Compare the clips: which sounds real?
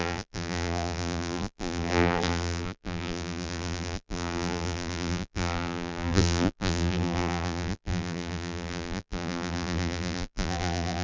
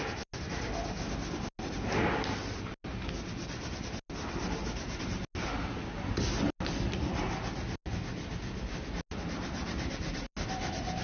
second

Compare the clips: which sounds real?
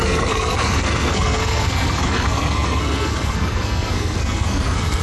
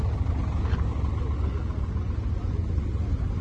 second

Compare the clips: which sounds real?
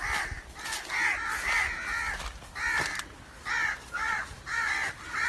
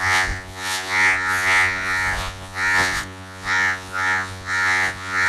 first